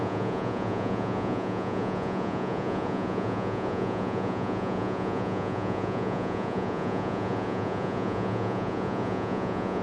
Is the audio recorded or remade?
remade